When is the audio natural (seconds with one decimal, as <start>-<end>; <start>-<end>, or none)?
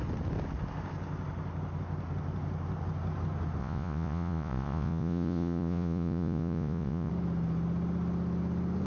0.0-3.6; 7.1-8.9